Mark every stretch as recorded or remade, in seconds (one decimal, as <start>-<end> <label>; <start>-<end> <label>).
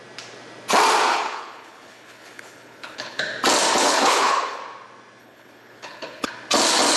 0.0-1.1 recorded; 1.1-3.2 remade; 3.2-3.8 recorded; 3.8-4.6 remade; 4.6-5.2 recorded; 5.2-6.3 remade; 6.3-7.0 recorded